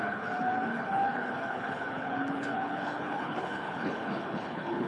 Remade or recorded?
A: remade